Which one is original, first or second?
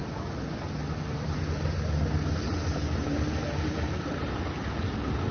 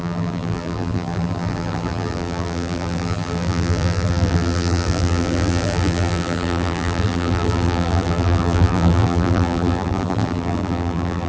first